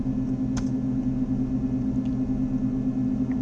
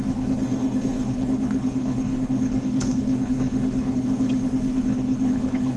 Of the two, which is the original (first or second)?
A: first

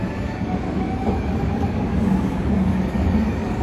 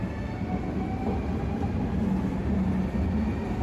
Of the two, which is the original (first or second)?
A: second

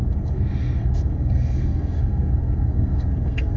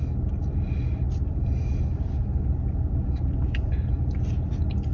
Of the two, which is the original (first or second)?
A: second